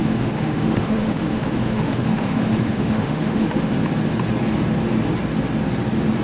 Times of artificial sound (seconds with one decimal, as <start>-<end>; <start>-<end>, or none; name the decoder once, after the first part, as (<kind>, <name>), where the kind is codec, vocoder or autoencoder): 0.0-3.7 (autoencoder, DAC-VAE)